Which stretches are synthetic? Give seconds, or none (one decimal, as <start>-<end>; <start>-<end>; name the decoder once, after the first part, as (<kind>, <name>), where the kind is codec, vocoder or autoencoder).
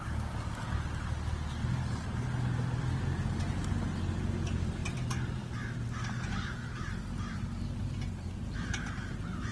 none